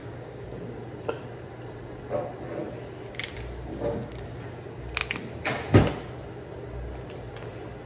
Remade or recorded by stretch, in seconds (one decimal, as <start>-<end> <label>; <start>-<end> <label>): 0.0-0.6 remade; 0.6-3.7 recorded; 3.7-4.4 remade; 4.4-7.9 recorded